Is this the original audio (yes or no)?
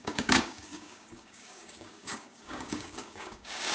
no